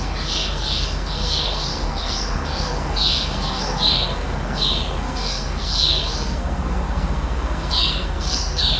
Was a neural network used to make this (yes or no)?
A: yes